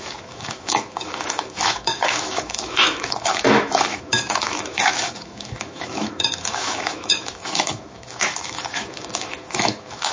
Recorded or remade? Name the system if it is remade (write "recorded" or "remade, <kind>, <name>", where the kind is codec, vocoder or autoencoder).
remade, autoencoder, DAC-VAE